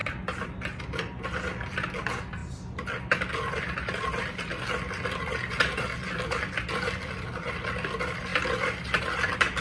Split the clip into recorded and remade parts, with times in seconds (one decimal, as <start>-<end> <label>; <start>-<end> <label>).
0.0-9.6 recorded